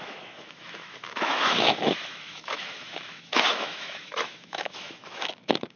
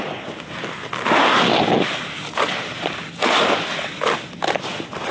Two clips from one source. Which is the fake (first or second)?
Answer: first